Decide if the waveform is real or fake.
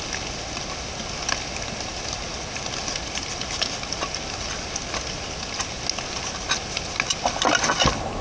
real